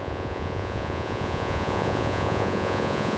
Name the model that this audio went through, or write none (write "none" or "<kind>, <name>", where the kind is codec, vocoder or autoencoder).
vocoder, Vocos